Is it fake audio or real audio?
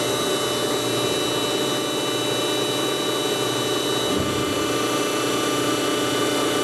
real